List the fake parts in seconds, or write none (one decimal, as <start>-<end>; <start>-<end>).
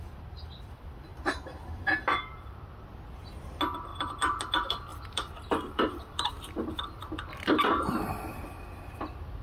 1.1-1.6; 3.9-4.4; 4.9-6.8